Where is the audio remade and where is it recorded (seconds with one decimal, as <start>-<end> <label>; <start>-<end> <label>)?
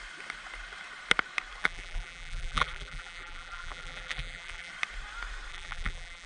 0.0-1.6 recorded; 1.6-4.7 remade; 4.7-5.5 recorded; 5.5-6.3 remade